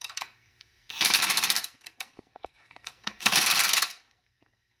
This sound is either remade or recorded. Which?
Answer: remade